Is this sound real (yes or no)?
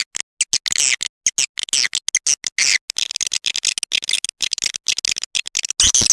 yes